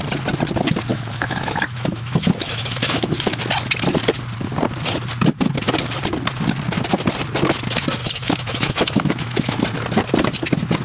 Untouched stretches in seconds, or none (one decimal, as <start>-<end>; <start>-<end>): 0.0-0.9; 3.4-8.0; 9.6-10.8